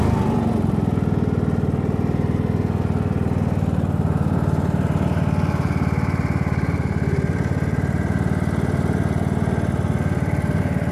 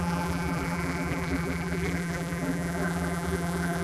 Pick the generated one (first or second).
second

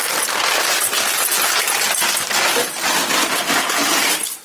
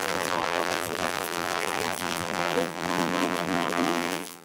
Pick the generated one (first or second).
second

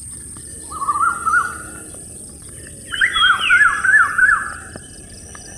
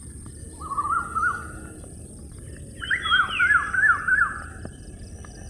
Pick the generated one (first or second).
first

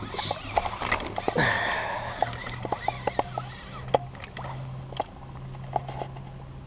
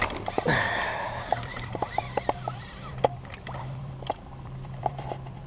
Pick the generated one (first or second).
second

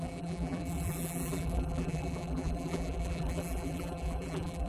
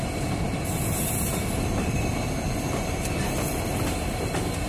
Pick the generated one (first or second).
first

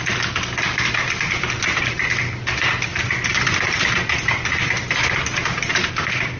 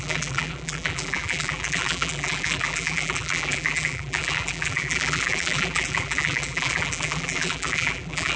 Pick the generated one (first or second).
second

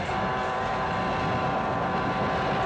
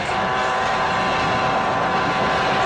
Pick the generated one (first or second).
first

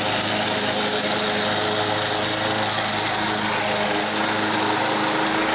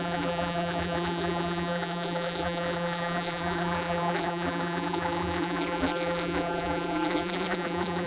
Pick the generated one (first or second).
second